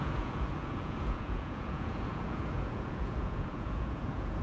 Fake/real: fake